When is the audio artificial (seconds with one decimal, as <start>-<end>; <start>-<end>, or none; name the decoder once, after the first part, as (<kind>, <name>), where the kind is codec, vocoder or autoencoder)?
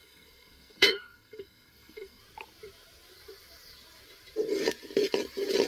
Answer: 0.0-2.2 (codec, SNAC)